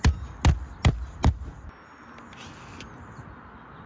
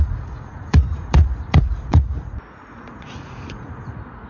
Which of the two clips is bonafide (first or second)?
first